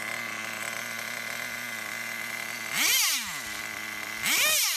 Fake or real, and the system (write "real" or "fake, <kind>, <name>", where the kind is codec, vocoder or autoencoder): real